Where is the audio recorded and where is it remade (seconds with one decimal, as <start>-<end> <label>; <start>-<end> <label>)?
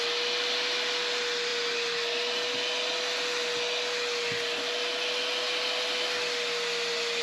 0.0-7.2 recorded